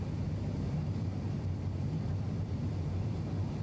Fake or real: fake